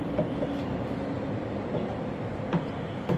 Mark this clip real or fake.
real